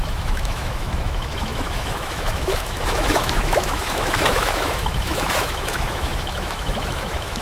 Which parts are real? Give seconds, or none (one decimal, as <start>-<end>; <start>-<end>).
none